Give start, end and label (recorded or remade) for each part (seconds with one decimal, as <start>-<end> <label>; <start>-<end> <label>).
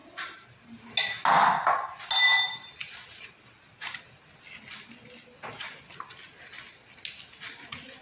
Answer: 0.0-8.0 recorded